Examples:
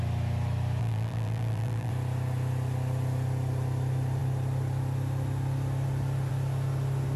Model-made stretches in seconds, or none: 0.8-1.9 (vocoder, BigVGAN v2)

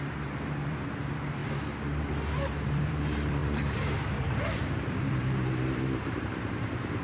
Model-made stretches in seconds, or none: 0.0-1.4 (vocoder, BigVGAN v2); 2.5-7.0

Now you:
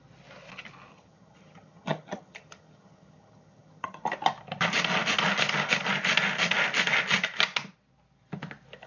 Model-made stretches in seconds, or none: 0.9-4.0 (vocoder, HiFi-GAN)

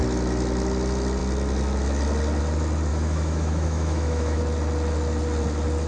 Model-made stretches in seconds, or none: 2.9-4.4 (autoencoder, DAC-VAE)